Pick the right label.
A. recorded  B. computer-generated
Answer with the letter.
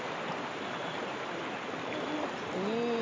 A